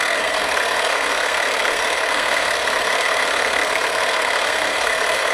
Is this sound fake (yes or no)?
yes